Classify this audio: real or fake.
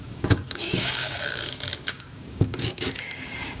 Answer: fake